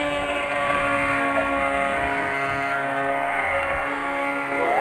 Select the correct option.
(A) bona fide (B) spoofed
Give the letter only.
B